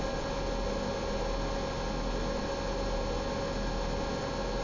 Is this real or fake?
real